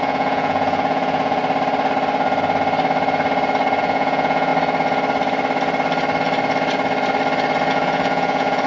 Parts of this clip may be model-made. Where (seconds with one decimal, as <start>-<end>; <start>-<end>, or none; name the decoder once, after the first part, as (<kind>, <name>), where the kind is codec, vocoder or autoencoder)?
0.0-1.4 (vocoder, Vocos); 3.8-4.5; 7.7-8.7